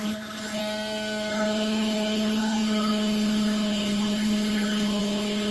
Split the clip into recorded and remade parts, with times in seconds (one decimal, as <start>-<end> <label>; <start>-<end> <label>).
0.0-0.6 remade; 0.6-1.3 recorded; 1.3-5.5 remade